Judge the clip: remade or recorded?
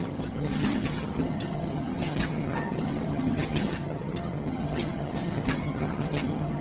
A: remade